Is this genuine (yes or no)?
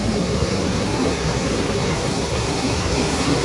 no